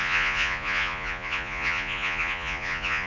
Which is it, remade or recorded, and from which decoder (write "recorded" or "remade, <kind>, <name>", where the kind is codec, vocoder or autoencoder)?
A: remade, vocoder, Vocos